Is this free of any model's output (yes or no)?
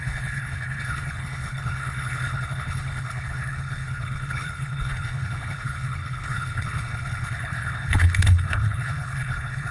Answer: no